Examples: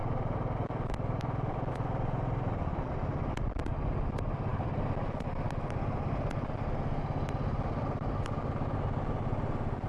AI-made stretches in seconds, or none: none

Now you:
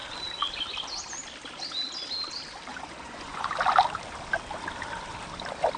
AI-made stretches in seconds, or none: 2.7-3.5 (vocoder, Vocos)

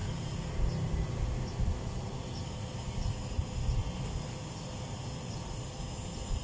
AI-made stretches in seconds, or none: none

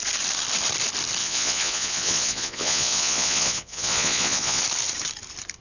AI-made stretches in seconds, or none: 1.2-4.6 (vocoder, Vocos)

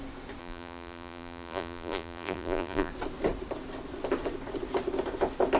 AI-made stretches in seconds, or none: 0.4-2.9 (vocoder, BigVGAN v2)

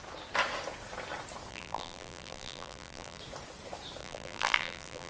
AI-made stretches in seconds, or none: 1.5-3.2 (vocoder, BigVGAN v2); 4.0-5.1

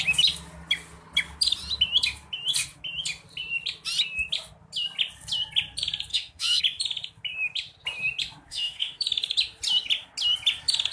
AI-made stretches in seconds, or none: 6.1-6.6 (autoencoder, DAC-VAE); 8.5-9.0

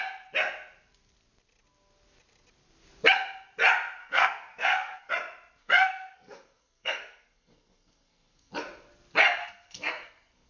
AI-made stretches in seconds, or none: 4.0-5.1 (codec, SNAC); 5.6-8.5; 9.4-10.5